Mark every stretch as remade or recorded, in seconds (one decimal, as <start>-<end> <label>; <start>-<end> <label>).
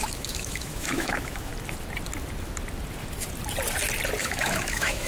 0.0-1.5 remade; 1.5-4.2 recorded; 4.2-5.1 remade